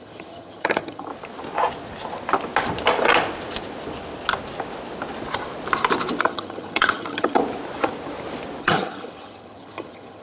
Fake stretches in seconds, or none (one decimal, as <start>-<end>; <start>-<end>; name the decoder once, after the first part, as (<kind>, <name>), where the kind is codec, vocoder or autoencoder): 0.0-1.1 (vocoder, HiFi-GAN); 6.2-7.4; 8.6-10.2